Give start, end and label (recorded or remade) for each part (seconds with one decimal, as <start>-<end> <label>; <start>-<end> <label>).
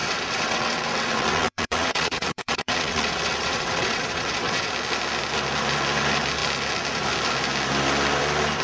0.0-4.7 remade; 4.7-8.6 recorded